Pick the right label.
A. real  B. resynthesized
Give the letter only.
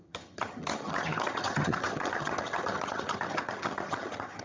B